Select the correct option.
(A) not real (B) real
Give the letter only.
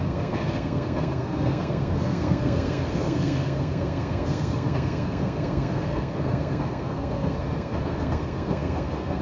A